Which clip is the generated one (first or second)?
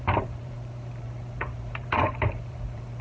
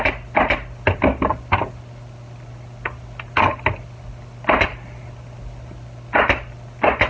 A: first